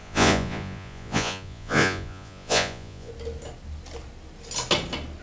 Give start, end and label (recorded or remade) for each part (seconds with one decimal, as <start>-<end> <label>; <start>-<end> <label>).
0.0-3.1 remade; 3.1-5.2 recorded